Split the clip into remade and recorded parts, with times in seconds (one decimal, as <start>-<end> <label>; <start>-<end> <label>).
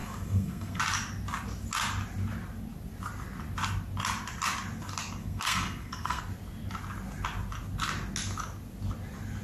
0.0-0.8 remade; 0.8-5.2 recorded; 5.2-6.2 remade; 6.2-9.4 recorded